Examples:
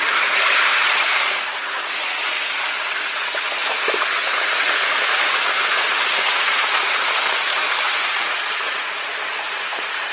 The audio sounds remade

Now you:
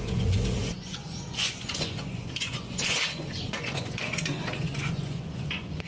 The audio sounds remade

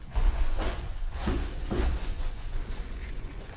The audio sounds remade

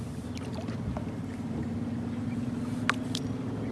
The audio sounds recorded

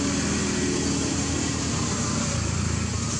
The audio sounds recorded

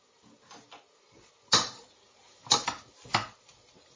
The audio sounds recorded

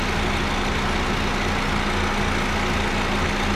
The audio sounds recorded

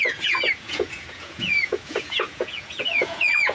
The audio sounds remade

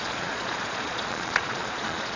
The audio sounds remade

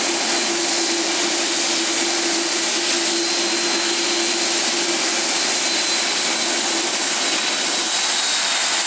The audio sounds recorded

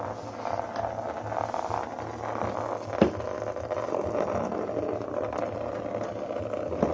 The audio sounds recorded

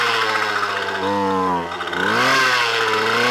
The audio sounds recorded